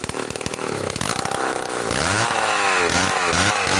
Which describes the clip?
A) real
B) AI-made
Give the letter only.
B